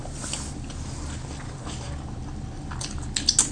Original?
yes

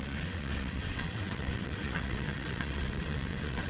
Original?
no